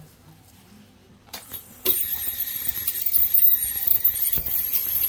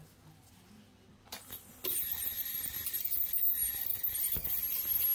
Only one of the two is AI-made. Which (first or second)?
first